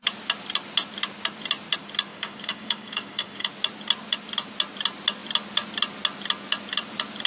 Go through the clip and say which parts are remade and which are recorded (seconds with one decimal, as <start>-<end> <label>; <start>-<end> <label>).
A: 0.0-2.1 recorded; 2.1-3.5 remade; 3.5-7.3 recorded